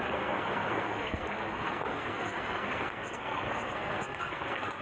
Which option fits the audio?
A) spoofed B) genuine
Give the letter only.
A